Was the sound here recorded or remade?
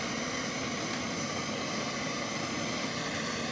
recorded